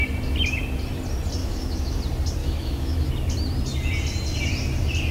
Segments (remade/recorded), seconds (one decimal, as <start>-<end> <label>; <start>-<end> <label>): 0.0-1.4 recorded; 1.4-2.0 remade; 2.0-2.4 recorded; 2.4-3.1 remade; 3.1-5.1 recorded